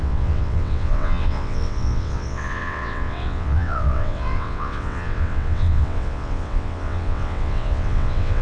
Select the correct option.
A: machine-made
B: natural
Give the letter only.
A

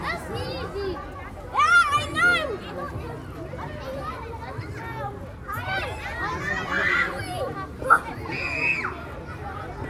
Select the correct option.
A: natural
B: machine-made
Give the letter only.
A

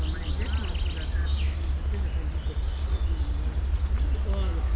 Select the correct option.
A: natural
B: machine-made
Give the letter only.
A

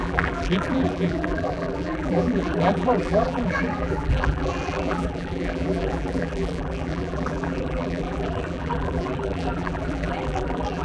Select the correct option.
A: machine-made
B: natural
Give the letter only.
A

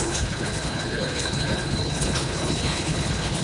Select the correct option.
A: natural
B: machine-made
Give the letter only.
B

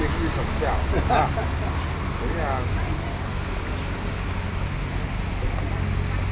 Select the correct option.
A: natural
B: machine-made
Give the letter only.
A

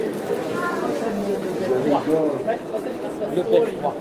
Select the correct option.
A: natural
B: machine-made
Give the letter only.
A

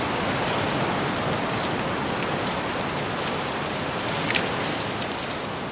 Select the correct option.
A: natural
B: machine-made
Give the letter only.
A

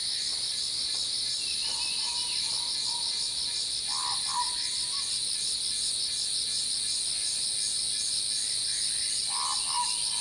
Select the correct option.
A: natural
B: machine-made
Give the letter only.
A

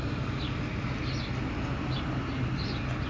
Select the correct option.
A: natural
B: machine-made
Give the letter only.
A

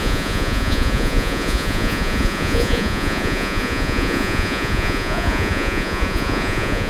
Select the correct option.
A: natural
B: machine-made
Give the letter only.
B